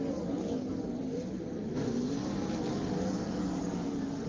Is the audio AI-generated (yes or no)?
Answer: no